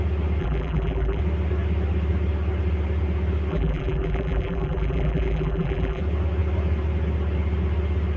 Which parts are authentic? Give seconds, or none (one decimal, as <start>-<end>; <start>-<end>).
0.0-0.4; 1.2-3.5; 6.0-8.2